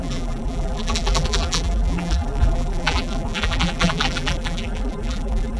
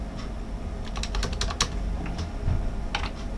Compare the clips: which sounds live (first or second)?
second